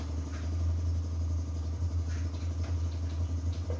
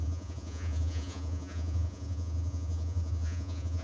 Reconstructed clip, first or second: second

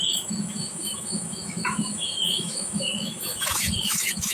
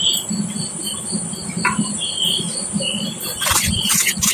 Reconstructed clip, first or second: first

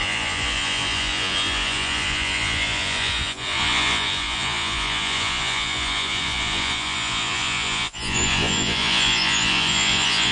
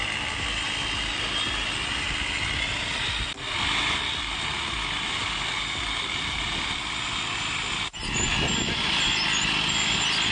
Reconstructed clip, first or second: first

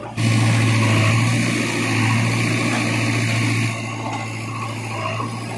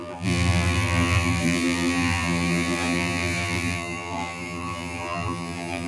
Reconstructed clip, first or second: second